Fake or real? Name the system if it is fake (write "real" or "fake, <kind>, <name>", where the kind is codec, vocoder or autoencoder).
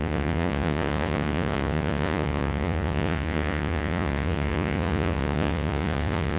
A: fake, vocoder, Vocos